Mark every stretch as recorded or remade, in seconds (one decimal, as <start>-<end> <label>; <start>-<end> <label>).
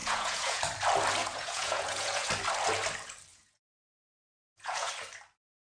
0.0-0.6 remade; 0.6-1.2 recorded; 1.2-2.3 remade; 2.3-3.3 recorded; 3.3-4.9 remade; 4.9-5.6 recorded